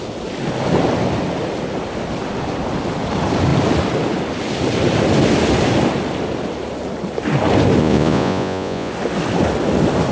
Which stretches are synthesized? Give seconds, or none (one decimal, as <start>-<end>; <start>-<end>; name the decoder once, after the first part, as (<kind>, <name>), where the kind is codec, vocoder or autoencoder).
7.8-8.9 (vocoder, Vocos)